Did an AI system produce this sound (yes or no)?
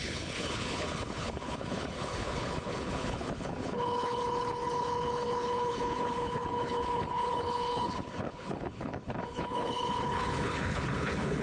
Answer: yes